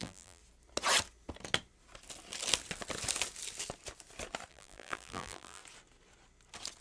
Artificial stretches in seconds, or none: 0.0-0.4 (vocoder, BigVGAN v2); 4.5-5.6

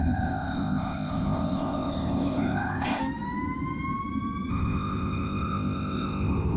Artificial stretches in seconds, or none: 0.0-3.0 (codec, ZipCodec); 4.5-6.6

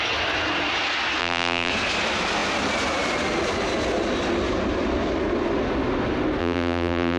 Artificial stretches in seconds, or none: 1.2-1.7 (vocoder, BigVGAN v2); 6.4-7.2

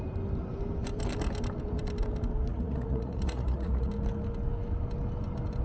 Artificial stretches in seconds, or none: 2.5-3.9 (vocoder, Vocos)

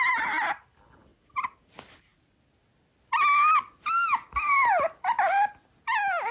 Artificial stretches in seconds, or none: none

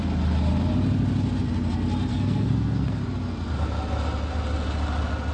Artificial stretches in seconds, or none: 2.1-3.0 (codec, SNAC)

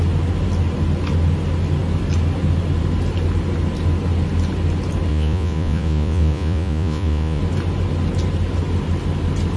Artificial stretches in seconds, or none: 5.1-7.4 (vocoder, Vocos)

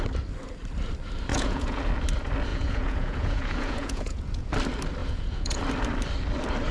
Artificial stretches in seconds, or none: 1.3-1.8 (vocoder, Vocos); 2.5-4.5; 5.0-5.6